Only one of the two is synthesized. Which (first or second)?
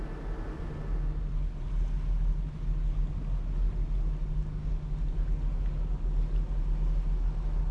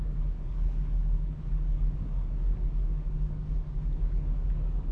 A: second